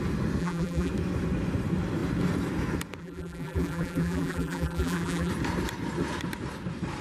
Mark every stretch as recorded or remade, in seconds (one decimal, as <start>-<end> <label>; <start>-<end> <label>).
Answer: 0.0-0.4 recorded; 0.4-0.9 remade; 0.9-3.0 recorded; 3.0-5.3 remade; 5.3-7.0 recorded